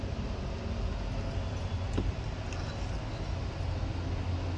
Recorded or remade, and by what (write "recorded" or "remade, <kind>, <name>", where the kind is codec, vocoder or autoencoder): recorded